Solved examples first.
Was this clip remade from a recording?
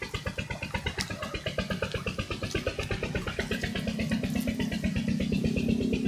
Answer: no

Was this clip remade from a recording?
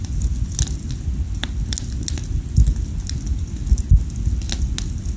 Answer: no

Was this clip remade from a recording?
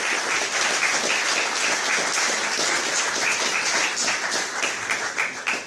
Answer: no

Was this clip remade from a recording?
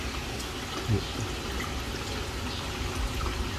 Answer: no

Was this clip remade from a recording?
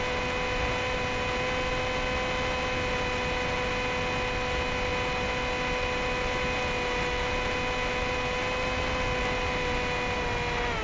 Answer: no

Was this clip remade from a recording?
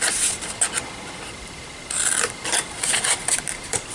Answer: no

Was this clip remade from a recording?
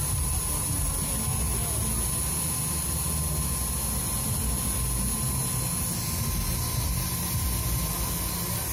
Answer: no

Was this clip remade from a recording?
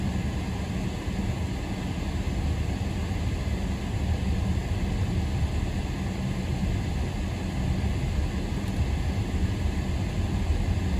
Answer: no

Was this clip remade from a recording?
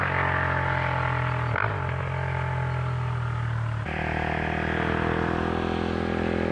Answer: no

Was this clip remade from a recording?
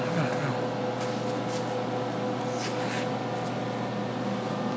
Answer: no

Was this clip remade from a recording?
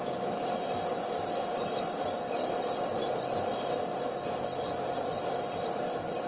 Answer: no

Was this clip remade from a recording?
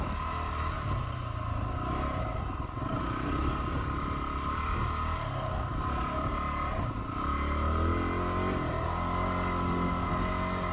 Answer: no